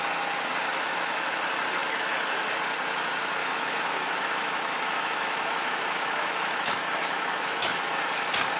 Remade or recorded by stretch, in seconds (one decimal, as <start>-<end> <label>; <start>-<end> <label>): 0.0-0.7 recorded; 0.7-1.3 remade; 1.3-1.8 recorded; 1.8-2.5 remade; 2.5-3.4 recorded; 3.4-7.9 remade; 7.9-8.6 recorded